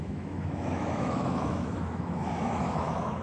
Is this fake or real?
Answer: fake